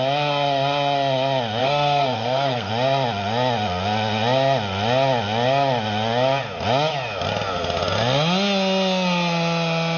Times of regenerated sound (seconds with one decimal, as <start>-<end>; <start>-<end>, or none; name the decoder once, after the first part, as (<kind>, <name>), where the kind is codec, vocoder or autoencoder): 1.6-2.7 (codec, SNAC)